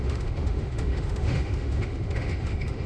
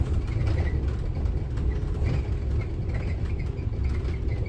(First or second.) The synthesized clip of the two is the first